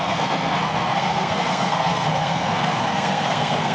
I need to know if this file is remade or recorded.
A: remade